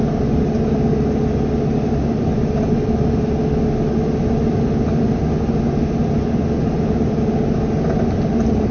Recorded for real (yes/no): yes